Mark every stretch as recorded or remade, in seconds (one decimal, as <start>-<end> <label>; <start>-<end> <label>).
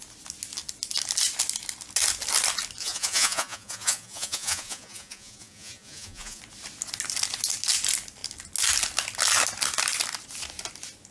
0.0-2.8 recorded; 2.8-6.4 remade; 6.4-11.1 recorded